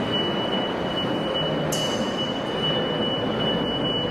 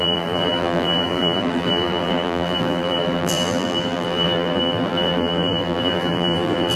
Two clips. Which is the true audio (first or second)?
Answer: first